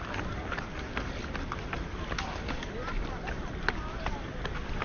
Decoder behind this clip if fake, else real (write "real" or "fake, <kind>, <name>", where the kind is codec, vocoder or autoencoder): real